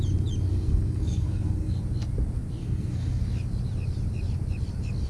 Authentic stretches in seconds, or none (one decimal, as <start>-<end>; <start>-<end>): 0.0-0.5; 1.8-2.6; 3.2-5.1